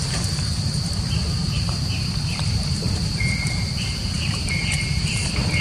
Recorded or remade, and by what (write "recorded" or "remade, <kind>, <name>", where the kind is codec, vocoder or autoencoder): remade, vocoder, BigVGAN v2